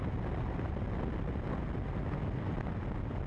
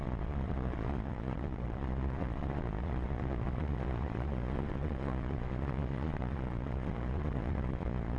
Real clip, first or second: first